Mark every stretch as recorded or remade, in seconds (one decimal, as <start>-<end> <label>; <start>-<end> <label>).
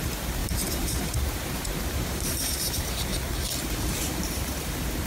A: 0.0-3.1 remade; 3.1-3.6 recorded; 3.6-5.1 remade